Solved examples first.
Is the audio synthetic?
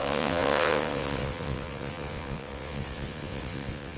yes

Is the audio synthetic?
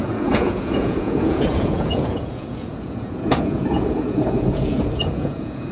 yes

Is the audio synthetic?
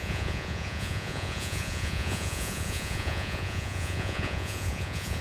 yes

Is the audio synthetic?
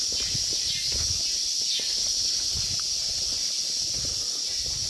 no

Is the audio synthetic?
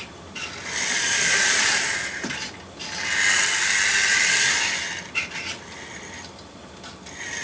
no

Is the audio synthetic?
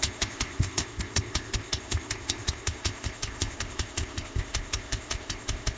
yes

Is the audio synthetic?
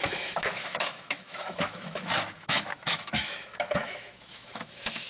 yes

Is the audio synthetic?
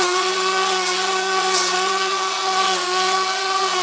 yes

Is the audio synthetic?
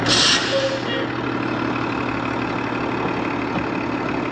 no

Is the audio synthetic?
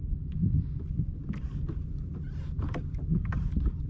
no